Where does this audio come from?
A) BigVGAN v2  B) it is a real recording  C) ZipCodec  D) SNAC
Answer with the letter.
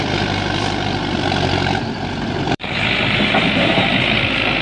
A